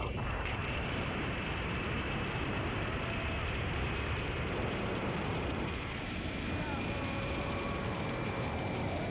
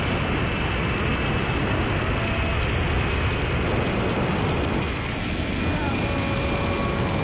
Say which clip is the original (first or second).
second